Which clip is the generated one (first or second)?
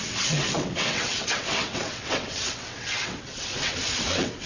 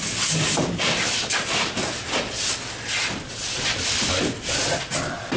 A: first